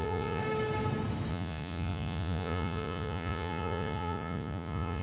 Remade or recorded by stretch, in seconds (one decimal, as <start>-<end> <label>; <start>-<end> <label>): 0.0-0.4 remade; 0.4-1.3 recorded; 1.3-5.0 remade